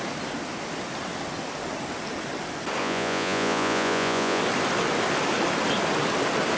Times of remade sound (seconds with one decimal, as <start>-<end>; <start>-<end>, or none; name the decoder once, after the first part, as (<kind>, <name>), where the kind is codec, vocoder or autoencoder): 2.8-4.4 (vocoder, Vocos)